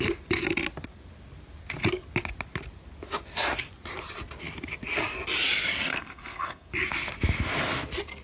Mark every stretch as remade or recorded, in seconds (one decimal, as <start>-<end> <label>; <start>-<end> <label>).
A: 0.0-5.9 recorded; 5.9-6.7 remade; 6.7-8.2 recorded